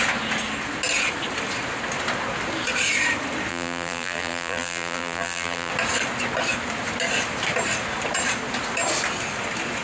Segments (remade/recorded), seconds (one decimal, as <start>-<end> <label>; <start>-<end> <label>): 0.0-3.5 recorded; 3.5-5.7 remade; 5.7-9.8 recorded